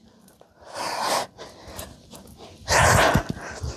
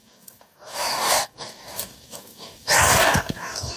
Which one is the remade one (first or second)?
second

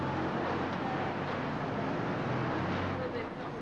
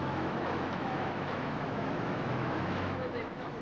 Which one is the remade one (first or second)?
second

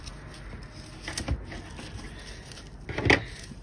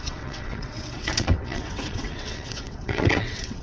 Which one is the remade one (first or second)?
second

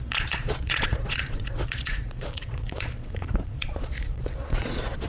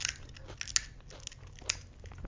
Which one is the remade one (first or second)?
first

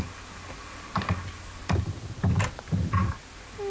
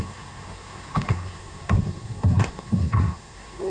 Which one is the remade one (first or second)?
second